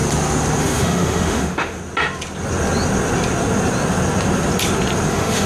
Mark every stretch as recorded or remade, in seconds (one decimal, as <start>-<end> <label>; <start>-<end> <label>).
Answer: 0.0-0.6 recorded; 0.6-1.8 remade; 1.8-5.1 recorded; 5.1-5.5 remade